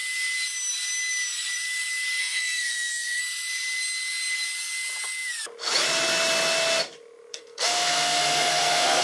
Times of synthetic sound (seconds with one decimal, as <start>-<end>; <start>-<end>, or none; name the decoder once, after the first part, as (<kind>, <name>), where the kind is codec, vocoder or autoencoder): 2.2-3.2 (codec, SNAC); 7.3-9.0